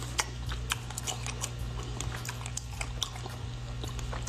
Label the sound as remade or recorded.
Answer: recorded